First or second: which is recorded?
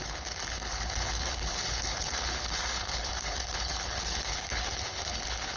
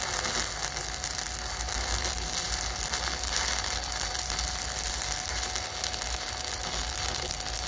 second